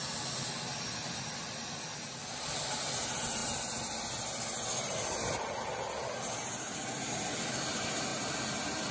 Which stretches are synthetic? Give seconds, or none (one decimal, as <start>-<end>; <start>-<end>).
none